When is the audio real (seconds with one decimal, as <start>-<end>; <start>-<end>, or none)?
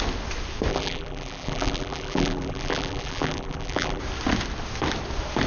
0.0-0.7; 4.0-5.5